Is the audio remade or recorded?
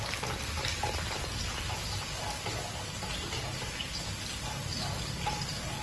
recorded